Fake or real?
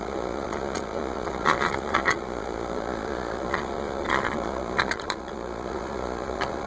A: fake